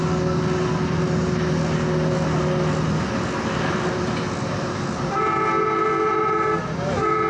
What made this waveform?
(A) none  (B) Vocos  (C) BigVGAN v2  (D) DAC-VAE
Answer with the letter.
A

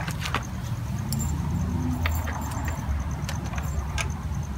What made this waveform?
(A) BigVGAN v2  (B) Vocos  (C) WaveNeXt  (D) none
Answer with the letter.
D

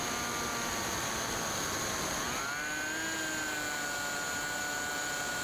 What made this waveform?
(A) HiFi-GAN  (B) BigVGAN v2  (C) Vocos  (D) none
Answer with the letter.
D